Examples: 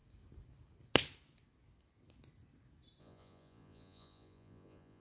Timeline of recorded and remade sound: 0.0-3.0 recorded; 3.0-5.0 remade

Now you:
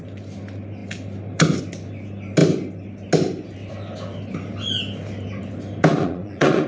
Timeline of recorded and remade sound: 0.0-5.9 recorded; 5.9-6.7 remade

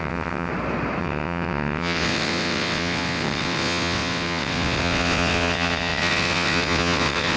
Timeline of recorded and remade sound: 0.0-0.5 remade; 0.5-1.0 recorded; 1.0-7.4 remade